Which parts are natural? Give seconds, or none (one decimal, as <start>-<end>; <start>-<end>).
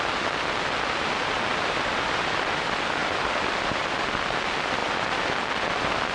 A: 0.0-1.5; 2.5-3.0; 3.8-4.8; 5.4-6.1